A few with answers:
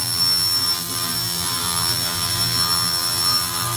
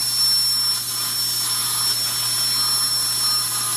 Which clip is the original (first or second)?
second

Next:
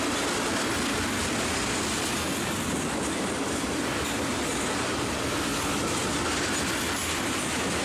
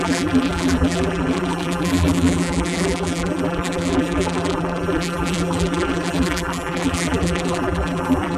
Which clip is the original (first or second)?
first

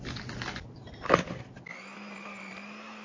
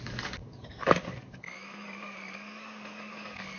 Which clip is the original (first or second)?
first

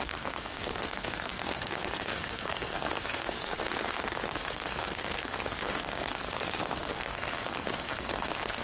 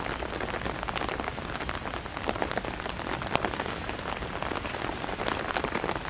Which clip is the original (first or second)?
second